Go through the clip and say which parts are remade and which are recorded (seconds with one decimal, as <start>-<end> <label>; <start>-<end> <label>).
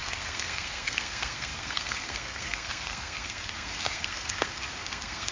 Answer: 0.0-5.3 remade